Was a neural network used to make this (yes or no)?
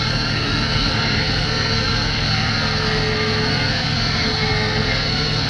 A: yes